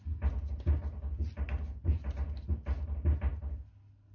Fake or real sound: real